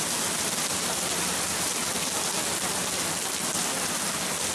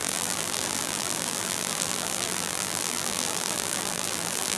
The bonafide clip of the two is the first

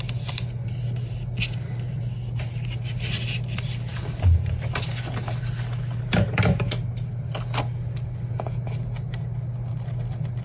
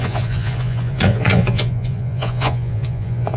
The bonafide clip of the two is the first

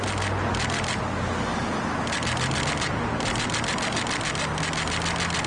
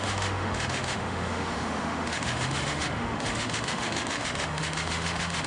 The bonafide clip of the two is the first